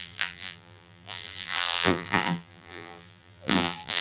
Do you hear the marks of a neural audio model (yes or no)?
yes